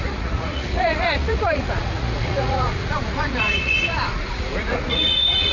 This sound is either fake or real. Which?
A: fake